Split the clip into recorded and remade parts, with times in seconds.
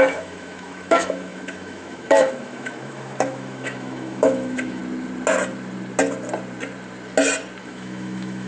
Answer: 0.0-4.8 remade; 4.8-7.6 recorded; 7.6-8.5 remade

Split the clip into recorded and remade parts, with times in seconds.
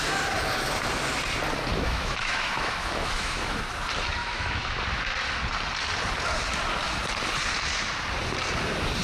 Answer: 0.0-1.7 recorded; 1.7-3.6 remade; 3.6-4.2 recorded; 4.2-4.8 remade; 4.8-9.0 recorded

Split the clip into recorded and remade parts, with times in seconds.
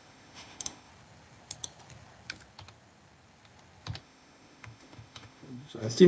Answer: 0.0-0.9 remade; 0.9-4.0 recorded; 4.0-6.1 remade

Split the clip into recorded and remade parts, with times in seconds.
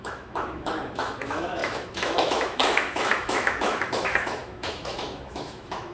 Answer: 0.0-5.9 remade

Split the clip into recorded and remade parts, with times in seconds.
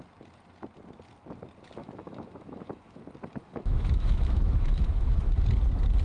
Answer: 0.0-1.8 recorded; 1.8-3.0 remade; 3.0-3.4 recorded; 3.4-5.3 remade; 5.3-6.0 recorded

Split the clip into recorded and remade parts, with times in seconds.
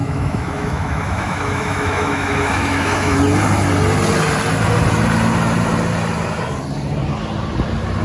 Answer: 0.0-3.2 remade; 3.2-8.0 recorded